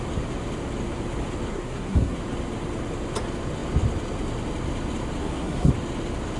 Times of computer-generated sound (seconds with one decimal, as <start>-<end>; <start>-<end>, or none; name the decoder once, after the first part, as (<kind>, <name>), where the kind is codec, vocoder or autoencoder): 1.5-2.2 (codec, SNAC); 5.2-5.7